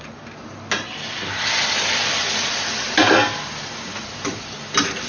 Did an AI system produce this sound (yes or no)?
no